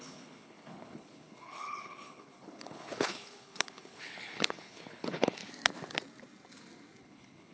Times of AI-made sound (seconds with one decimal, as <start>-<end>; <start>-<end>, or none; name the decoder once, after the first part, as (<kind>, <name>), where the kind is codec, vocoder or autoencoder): 0.0-5.4 (codec, HILCodec); 7.0-7.5